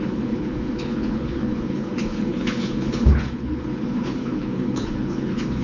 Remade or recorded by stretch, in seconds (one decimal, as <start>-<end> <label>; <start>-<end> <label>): 0.0-5.6 remade